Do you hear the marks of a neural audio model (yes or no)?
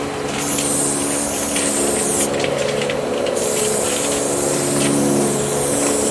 no